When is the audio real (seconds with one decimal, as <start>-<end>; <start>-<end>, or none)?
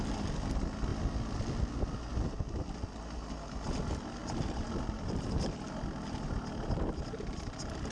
0.0-0.9; 1.4-4.2; 5.7-7.9